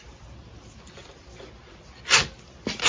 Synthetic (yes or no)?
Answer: no